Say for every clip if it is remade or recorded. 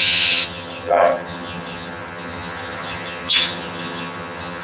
remade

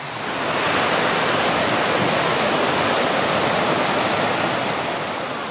recorded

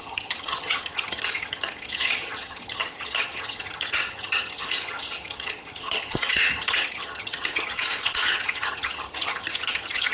remade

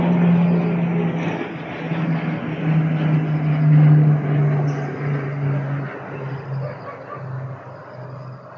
recorded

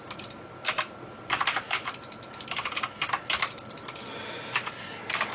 recorded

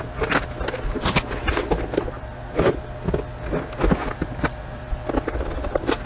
recorded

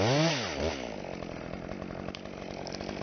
recorded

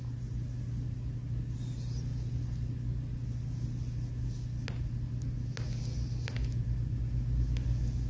recorded